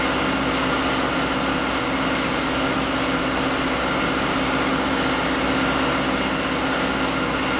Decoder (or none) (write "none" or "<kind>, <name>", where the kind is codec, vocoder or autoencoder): none